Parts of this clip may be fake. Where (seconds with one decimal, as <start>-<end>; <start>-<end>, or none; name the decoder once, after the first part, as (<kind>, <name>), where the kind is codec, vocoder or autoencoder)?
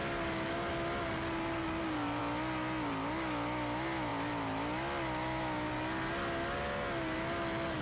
none